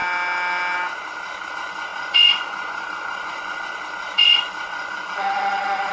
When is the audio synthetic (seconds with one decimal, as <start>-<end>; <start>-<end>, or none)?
1.5-5.9